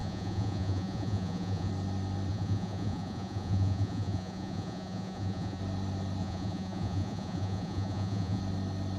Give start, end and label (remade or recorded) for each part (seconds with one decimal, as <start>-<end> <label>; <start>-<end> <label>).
0.0-1.7 remade; 1.7-2.3 recorded; 2.3-5.6 remade; 5.6-6.2 recorded; 6.2-8.4 remade; 8.4-9.0 recorded